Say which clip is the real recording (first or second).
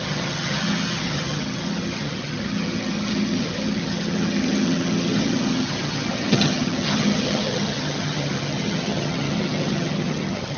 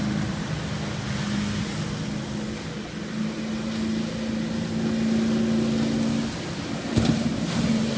second